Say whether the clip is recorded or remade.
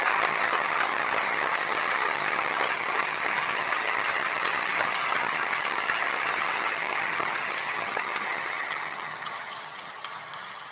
remade